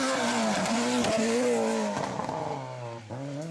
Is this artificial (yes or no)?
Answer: no